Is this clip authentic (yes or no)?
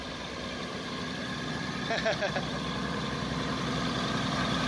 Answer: no